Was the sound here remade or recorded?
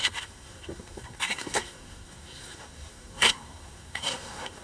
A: remade